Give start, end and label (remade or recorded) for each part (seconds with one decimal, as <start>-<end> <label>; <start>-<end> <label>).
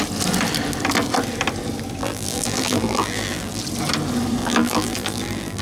0.0-2.0 recorded; 2.0-3.6 remade; 3.6-4.4 recorded; 4.4-5.6 remade